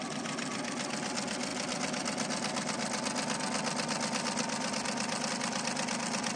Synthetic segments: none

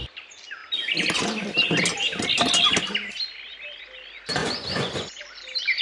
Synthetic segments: 4.4-5.2

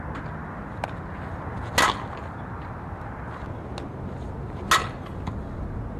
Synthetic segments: none

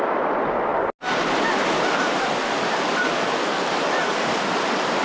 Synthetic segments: none

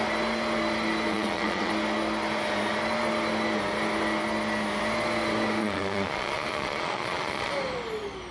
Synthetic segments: 1.1-1.7; 5.6-7.5

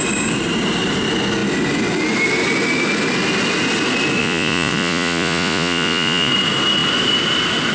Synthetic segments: 4.2-6.3

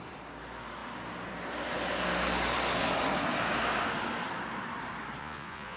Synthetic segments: 5.2-5.8

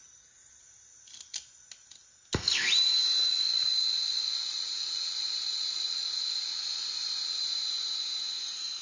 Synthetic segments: 3.3-6.9